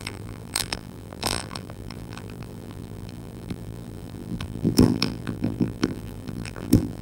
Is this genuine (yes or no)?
no